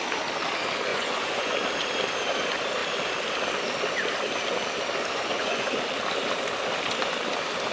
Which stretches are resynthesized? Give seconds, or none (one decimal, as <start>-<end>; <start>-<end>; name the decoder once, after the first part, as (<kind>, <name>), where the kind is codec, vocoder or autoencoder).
0.9-1.5 (vocoder, Vocos); 5.1-5.7